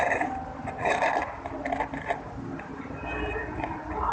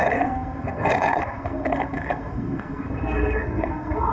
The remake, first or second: second